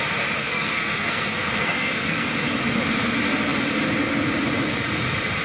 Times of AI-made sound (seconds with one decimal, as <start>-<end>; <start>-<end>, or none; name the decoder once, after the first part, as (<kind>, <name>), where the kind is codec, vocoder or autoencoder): 0.4-2.3 (codec, SNAC)